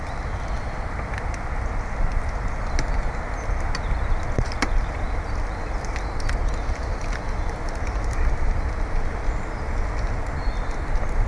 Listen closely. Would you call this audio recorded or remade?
recorded